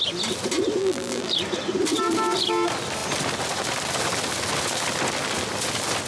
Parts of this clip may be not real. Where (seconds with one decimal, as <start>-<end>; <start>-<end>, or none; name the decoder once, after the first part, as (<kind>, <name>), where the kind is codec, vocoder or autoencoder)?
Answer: 0.8-1.3 (vocoder, BigVGAN v2)